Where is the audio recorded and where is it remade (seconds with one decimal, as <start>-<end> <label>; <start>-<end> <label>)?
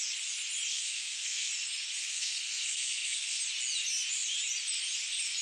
0.0-0.7 recorded; 0.7-1.5 remade; 1.5-2.0 recorded; 2.0-3.4 remade; 3.4-5.4 recorded